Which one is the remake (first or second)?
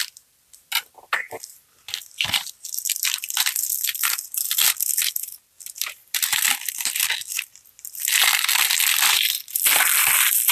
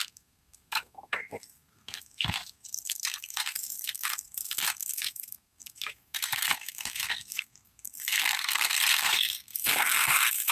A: second